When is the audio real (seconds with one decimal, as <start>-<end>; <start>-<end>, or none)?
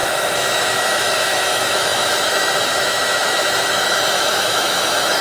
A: none